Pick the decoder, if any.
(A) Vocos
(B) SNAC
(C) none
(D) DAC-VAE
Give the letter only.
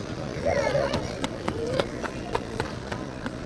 A